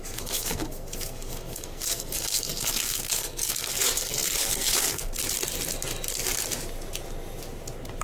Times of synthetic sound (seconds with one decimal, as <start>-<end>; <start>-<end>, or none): 0.0-5.2